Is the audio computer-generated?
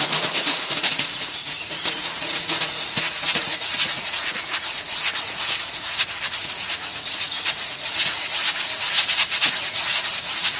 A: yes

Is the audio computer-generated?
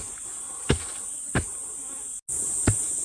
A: no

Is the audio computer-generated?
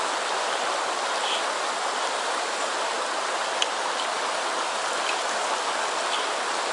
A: no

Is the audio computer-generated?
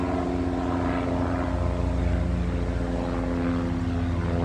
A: no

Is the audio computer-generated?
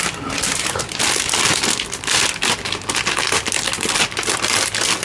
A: no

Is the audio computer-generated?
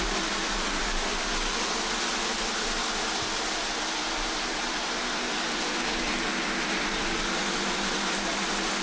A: no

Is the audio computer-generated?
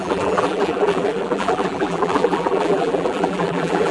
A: yes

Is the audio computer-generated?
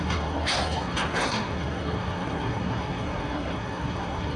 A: yes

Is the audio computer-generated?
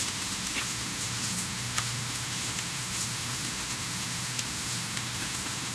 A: yes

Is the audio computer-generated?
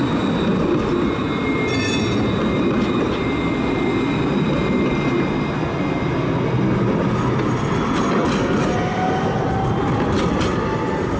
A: no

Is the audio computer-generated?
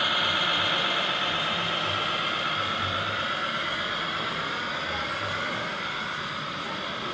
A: no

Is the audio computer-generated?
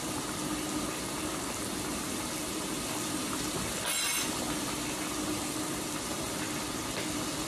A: no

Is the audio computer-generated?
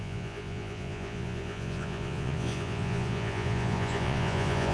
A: yes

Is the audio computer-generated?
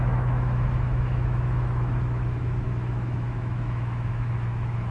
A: yes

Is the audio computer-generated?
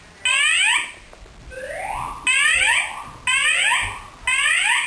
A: no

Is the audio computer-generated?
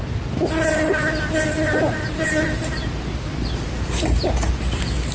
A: no